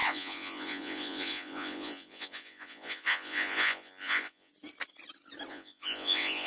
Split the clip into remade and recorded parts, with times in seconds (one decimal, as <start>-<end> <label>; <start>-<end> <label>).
0.0-4.5 remade; 4.5-5.5 recorded; 5.5-6.5 remade